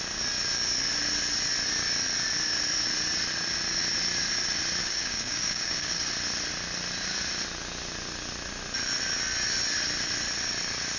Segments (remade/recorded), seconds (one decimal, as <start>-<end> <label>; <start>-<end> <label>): 0.0-4.8 recorded; 4.8-6.1 remade; 6.1-11.0 recorded